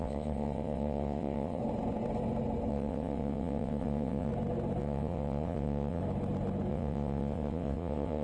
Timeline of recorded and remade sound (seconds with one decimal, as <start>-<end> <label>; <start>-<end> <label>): 0.0-1.6 remade; 1.6-2.7 recorded; 2.7-4.3 remade; 4.3-4.8 recorded; 4.8-6.0 remade; 6.0-6.7 recorded; 6.7-8.2 remade

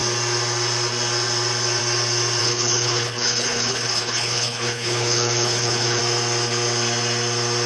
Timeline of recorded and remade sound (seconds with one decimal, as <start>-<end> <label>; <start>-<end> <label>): 0.0-2.4 recorded; 2.4-6.0 remade; 6.0-7.7 recorded